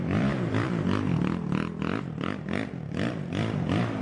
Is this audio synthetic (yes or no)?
yes